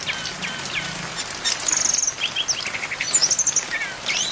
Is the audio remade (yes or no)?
no